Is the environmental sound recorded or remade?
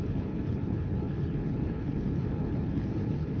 remade